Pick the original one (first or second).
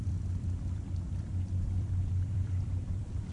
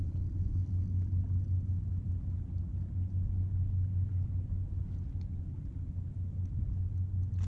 second